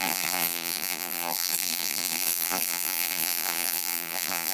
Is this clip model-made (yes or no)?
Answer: yes